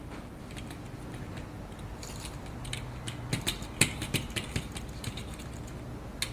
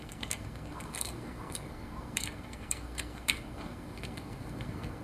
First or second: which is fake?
second